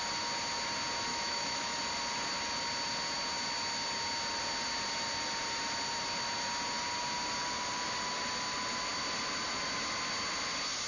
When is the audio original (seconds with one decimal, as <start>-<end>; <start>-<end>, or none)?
0.0-1.1; 1.8-10.9

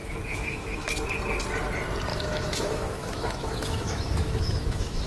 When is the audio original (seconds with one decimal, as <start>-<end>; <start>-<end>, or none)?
0.9-2.1